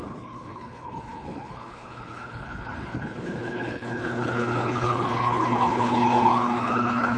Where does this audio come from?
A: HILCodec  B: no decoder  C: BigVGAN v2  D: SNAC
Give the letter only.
A